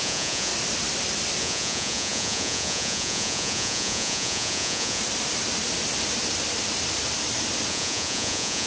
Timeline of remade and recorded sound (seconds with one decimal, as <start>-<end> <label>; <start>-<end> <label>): 0.0-0.5 remade; 0.5-1.4 recorded; 1.4-5.0 remade; 5.0-7.7 recorded; 7.7-8.7 remade

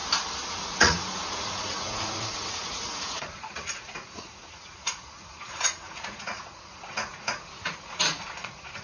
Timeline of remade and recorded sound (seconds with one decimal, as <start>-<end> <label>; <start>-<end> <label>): 0.0-0.6 recorded; 0.6-8.8 remade

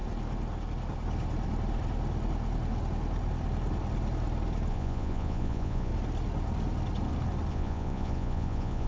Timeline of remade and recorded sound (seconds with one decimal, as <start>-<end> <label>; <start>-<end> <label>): 0.0-4.7 recorded; 4.7-5.9 remade; 5.9-7.5 recorded; 7.5-8.9 remade

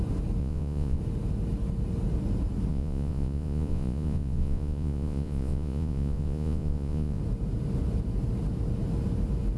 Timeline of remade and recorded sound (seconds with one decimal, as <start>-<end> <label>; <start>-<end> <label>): 0.0-0.4 recorded; 0.4-1.0 remade; 1.0-2.7 recorded; 2.7-7.2 remade; 7.2-9.6 recorded